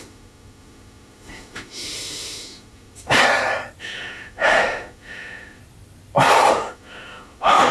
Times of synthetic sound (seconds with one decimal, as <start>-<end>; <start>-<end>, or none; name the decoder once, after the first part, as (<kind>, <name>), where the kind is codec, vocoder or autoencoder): 0.0-3.2 (autoencoder, DAC-VAE); 3.8-5.6; 6.5-7.7